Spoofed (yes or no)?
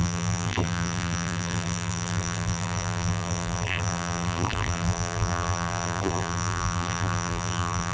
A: yes